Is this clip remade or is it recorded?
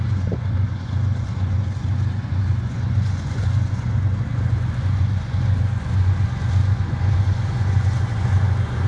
remade